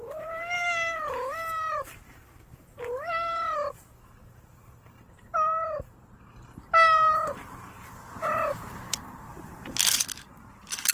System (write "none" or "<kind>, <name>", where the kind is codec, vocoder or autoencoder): vocoder, BigVGAN v2